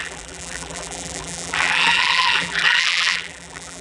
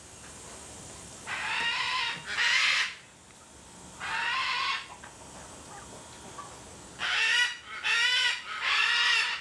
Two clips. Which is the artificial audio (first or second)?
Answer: first